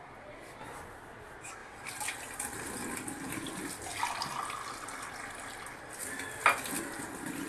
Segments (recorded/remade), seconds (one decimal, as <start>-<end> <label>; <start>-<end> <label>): 0.0-7.5 recorded